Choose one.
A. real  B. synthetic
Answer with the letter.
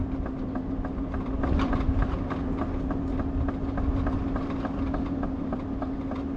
A